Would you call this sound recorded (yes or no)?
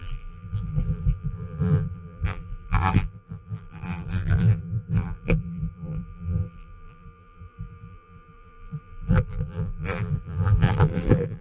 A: no